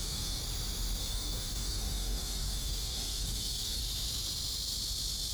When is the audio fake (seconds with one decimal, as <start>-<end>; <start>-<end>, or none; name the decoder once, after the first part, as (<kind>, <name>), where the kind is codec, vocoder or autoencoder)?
0.0-0.4 (codec, DAC); 1.0-3.8